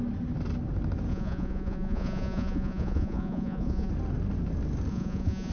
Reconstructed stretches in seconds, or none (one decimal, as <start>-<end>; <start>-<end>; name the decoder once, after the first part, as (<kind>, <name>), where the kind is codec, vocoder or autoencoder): 1.1-3.9 (vocoder, Vocos); 4.9-5.5